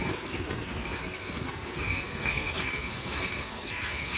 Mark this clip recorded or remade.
remade